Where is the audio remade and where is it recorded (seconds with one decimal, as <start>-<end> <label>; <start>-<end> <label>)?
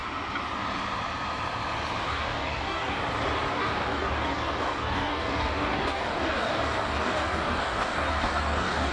0.0-2.0 recorded; 2.0-3.0 remade; 3.0-3.5 recorded; 3.5-8.9 remade